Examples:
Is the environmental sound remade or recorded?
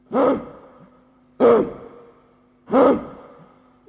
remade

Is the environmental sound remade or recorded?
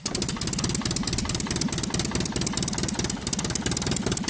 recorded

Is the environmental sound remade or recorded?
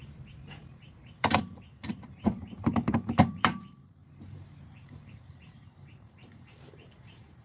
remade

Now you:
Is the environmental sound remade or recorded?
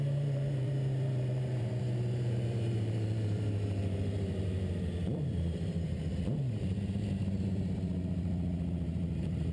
remade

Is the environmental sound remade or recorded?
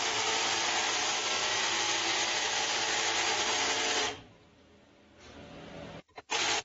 recorded